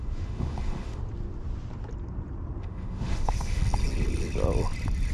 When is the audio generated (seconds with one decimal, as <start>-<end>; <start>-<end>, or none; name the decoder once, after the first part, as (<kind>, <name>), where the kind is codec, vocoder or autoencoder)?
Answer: 0.0-1.0 (autoencoder, DAC-VAE); 2.6-3.6